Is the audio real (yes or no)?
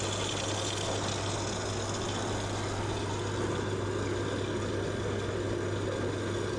yes